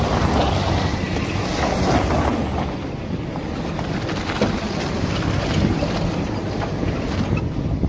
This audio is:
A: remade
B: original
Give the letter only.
B